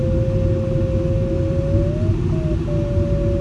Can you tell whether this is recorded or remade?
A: recorded